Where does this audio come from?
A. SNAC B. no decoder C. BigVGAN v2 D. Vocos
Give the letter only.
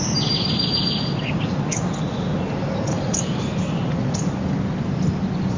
B